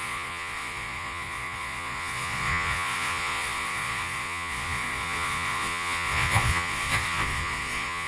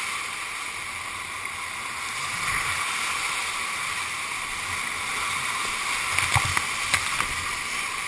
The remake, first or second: first